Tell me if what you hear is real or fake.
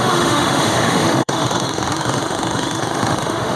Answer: fake